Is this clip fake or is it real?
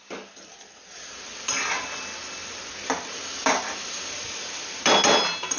real